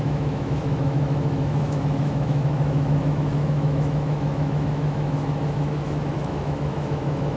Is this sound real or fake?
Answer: fake